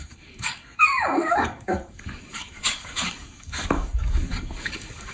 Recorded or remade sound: remade